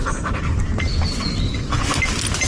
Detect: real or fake real